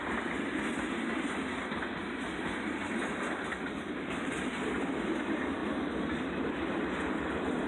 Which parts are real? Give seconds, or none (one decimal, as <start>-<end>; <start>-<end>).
0.0-7.7